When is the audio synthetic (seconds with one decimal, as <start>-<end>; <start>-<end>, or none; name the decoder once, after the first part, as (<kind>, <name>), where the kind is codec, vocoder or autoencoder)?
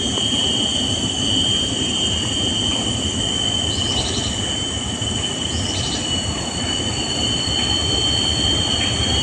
none